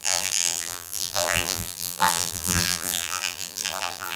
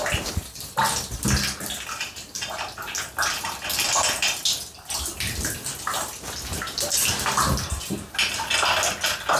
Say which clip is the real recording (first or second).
second